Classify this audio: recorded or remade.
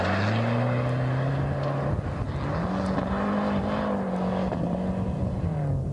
recorded